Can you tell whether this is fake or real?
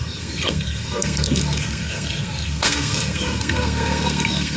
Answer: fake